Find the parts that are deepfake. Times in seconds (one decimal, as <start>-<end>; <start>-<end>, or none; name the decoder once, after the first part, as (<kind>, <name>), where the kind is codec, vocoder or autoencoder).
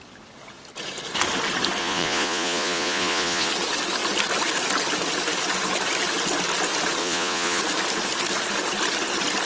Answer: 1.8-3.5 (vocoder, Vocos); 7.0-7.6